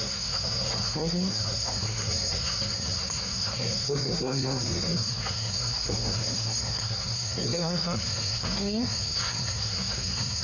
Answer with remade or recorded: remade